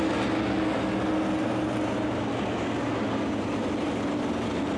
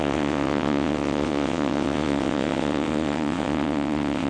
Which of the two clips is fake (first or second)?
second